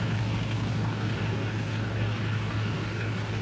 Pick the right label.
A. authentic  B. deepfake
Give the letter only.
B